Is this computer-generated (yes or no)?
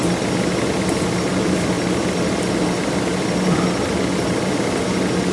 no